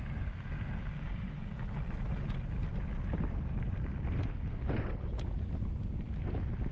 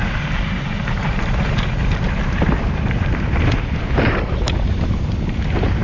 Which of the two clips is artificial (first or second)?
second